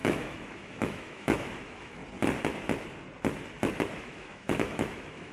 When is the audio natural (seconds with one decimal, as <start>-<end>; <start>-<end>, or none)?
2.0-4.0